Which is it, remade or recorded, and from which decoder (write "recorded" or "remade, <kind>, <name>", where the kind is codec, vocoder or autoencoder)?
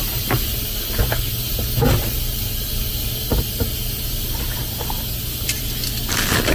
recorded